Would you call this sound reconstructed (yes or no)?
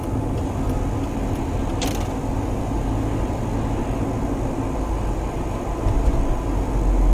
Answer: no